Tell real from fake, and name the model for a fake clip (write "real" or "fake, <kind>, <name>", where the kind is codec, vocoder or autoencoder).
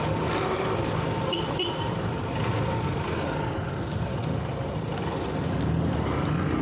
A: real